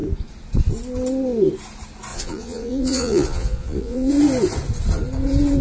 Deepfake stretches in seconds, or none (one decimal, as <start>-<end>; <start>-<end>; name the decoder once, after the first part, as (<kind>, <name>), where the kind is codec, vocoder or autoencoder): 2.1-4.1 (vocoder, Vocos)